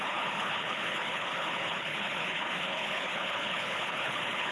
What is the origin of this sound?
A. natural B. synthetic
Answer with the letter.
B